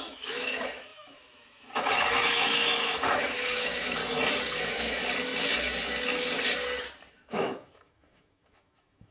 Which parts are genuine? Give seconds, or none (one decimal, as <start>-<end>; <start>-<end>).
4.0-4.6; 5.0-7.1